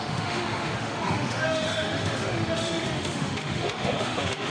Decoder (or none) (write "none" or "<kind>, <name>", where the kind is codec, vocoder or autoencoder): autoencoder, DAC-VAE